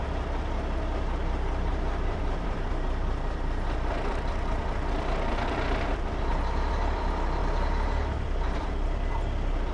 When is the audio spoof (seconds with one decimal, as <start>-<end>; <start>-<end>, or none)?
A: 1.7-6.7; 7.4-9.1